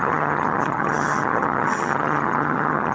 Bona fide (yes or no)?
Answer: no